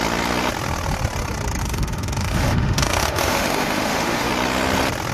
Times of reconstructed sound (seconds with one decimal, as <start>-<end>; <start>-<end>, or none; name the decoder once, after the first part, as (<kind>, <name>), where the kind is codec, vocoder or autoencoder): 1.6-4.3 (autoencoder, DAC-VAE)